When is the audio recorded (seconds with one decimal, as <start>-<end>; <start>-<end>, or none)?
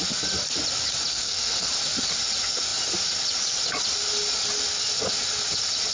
0.0-1.1; 1.7-5.9